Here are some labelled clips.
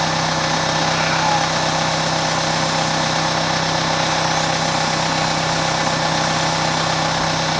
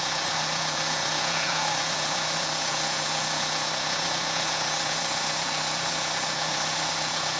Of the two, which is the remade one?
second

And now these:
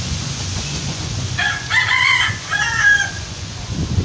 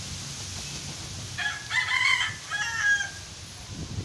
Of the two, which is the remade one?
first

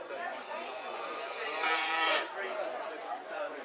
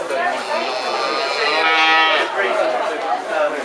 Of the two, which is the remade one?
first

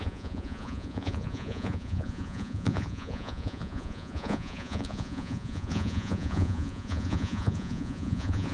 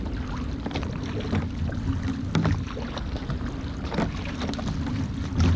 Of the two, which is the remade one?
first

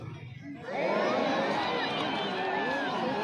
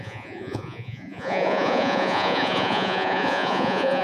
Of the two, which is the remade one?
second